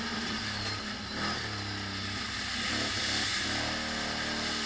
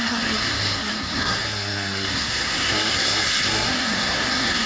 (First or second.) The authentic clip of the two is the first